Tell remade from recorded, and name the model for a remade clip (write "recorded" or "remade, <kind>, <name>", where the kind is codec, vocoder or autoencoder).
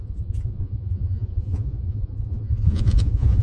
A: remade, vocoder, Vocos